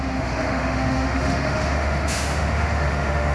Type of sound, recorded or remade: remade